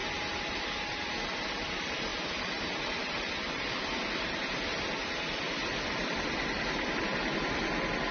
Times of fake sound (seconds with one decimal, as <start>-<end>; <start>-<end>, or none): none